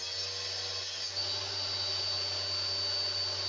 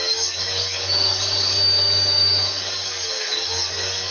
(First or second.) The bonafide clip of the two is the first